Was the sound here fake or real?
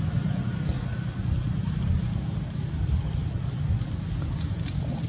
real